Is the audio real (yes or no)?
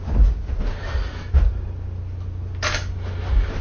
yes